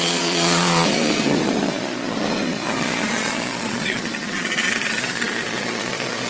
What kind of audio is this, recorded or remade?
remade